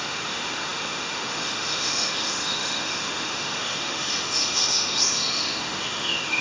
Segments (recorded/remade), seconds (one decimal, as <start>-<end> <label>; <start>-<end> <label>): 0.0-6.4 remade